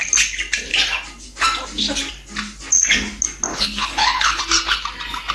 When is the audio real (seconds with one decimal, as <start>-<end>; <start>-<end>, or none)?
0.0-3.5; 4.4-5.3